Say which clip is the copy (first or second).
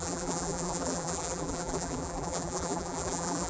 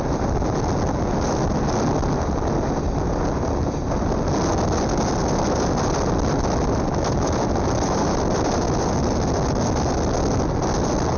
first